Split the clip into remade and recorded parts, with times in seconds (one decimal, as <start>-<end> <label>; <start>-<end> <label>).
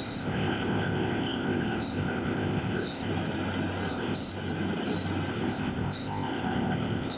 0.0-3.1 remade; 3.1-3.9 recorded; 3.9-4.3 remade; 4.3-5.3 recorded; 5.3-7.2 remade